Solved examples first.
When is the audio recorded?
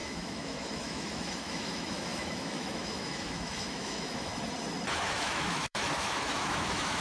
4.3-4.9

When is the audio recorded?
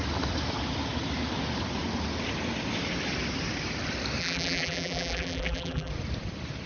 0.0-4.2; 5.9-6.7